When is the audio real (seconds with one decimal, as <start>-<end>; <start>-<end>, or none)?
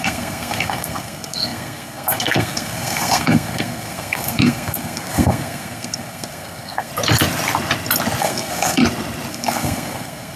6.9-8.2; 8.8-9.3